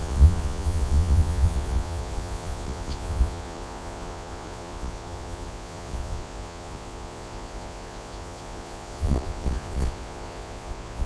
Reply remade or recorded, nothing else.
remade